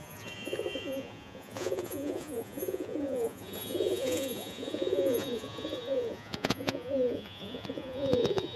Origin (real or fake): fake